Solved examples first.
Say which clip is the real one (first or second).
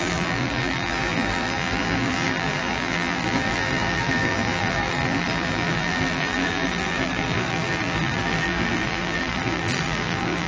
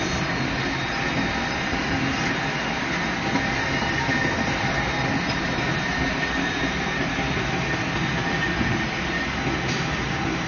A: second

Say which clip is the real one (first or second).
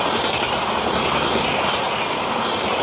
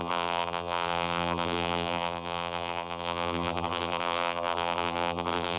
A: first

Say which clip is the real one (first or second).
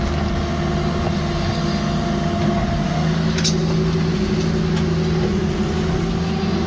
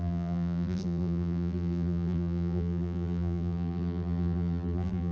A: first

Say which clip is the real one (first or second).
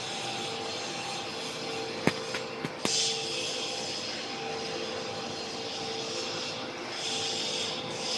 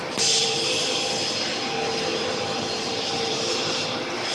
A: first